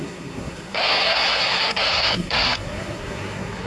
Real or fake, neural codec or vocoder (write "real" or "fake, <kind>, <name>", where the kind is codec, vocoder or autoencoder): fake, codec, SNAC